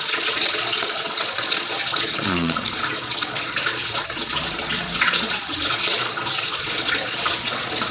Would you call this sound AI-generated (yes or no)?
yes